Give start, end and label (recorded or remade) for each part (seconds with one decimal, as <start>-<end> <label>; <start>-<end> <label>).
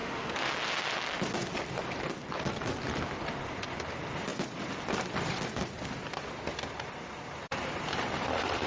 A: 0.0-0.5 remade; 0.5-8.7 recorded